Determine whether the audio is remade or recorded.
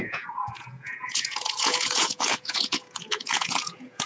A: remade